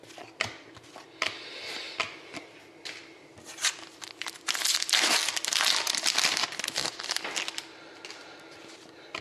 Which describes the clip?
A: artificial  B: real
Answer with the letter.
B